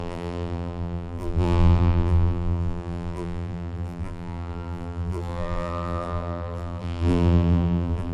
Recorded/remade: remade